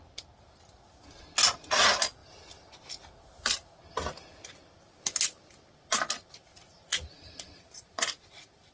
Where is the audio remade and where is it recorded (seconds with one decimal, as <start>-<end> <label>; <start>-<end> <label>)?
0.0-6.5 recorded; 6.5-8.1 remade; 8.1-8.7 recorded